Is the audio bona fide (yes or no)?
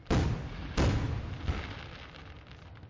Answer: yes